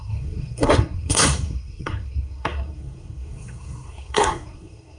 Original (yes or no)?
no